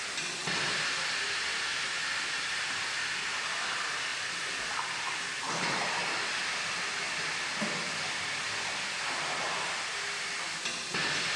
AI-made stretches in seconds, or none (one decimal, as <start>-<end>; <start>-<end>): none